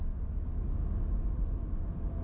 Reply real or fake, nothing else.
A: real